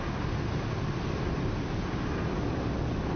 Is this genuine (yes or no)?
yes